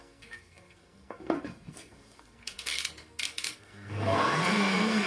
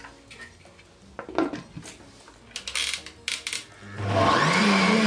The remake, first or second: first